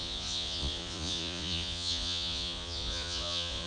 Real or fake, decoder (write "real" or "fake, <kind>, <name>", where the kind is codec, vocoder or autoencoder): fake, vocoder, Vocos